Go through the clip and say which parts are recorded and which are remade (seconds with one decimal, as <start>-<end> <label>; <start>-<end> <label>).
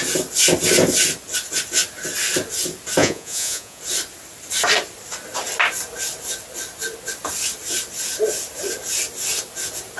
0.0-3.0 recorded; 3.0-3.8 remade; 3.8-10.0 recorded